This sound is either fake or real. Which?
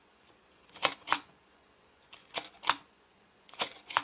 fake